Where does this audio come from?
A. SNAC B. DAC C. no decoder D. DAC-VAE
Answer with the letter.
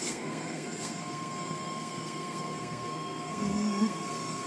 A